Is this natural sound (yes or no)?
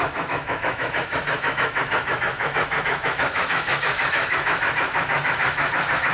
no